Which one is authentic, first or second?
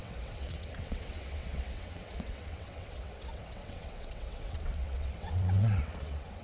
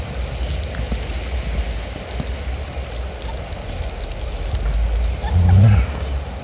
second